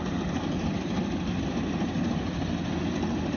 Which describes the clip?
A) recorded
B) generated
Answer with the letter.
A